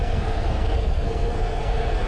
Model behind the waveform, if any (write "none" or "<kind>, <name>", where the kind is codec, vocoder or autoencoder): codec, SNAC